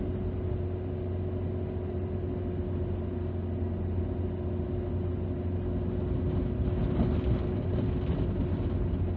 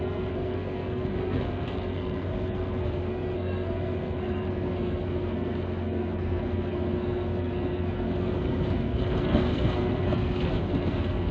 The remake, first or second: second